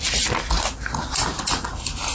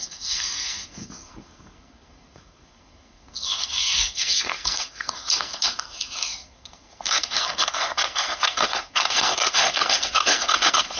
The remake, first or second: second